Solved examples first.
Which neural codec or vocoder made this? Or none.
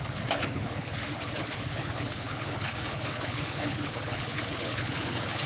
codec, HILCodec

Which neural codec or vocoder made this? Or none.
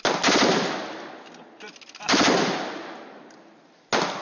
none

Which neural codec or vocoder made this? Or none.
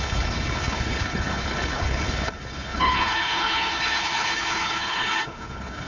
codec, HILCodec